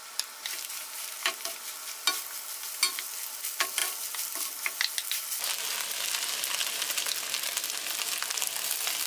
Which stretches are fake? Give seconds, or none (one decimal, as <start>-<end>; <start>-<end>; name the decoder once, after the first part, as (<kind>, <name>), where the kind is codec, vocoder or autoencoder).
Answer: none